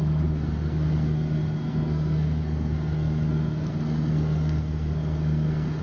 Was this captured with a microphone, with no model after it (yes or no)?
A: no